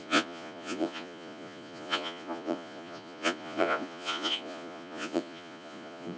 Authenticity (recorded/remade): remade